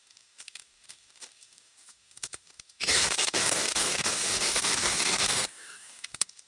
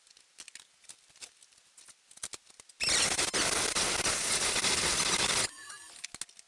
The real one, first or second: second